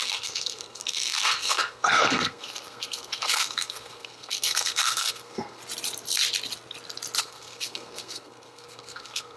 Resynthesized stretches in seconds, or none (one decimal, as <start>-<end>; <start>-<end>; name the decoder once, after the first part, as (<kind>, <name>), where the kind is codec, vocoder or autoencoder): 0.0-5.6 (codec, SNAC); 7.2-9.4